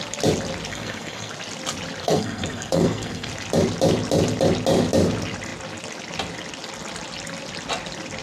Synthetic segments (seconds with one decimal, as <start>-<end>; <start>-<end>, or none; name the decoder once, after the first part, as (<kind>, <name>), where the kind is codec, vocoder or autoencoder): 0.7-1.3 (codec, SNAC); 2.0-3.3